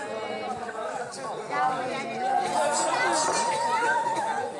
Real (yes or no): yes